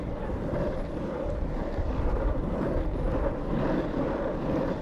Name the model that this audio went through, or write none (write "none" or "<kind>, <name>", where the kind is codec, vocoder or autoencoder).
vocoder, BigVGAN v2